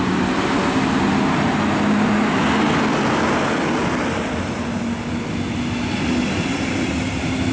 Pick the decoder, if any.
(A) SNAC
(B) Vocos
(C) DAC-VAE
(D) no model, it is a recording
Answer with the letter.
D